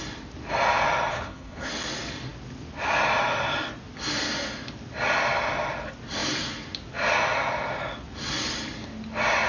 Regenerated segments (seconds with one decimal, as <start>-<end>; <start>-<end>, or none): 1.1-1.7